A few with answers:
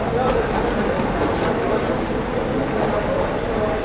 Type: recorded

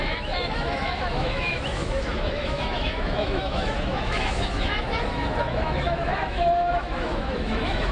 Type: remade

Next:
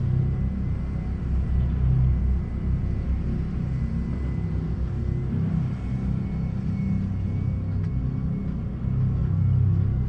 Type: recorded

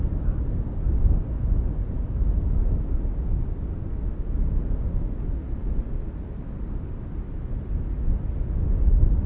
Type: recorded